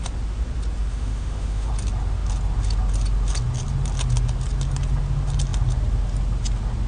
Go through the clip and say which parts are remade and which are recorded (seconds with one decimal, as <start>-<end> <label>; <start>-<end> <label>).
0.0-0.9 recorded; 0.9-1.7 remade; 1.7-6.9 recorded